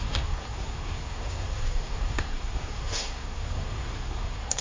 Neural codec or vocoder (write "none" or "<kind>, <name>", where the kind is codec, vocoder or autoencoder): codec, SNAC